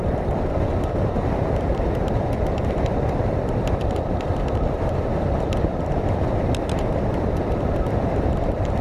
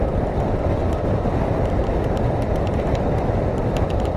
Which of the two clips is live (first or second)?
second